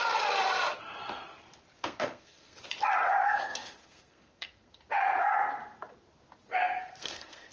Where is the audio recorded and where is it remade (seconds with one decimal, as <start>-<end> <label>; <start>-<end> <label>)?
0.0-1.8 recorded; 1.8-2.6 remade; 2.6-3.2 recorded; 3.2-4.8 remade; 4.8-6.5 recorded; 6.5-7.5 remade